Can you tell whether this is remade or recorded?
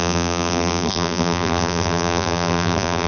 remade